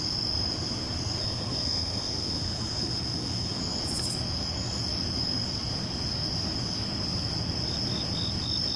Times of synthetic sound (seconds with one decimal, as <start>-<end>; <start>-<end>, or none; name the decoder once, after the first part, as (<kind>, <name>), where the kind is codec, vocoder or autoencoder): 1.2-3.6 (codec, SNAC)